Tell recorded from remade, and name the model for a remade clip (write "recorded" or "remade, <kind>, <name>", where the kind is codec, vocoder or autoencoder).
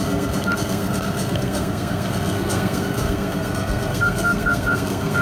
remade, codec, SNAC